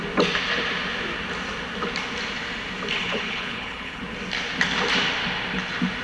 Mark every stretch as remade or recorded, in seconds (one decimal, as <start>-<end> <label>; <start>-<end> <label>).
0.0-3.0 recorded; 3.0-4.0 remade; 4.0-6.0 recorded